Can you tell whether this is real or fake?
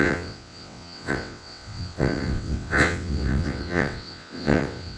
fake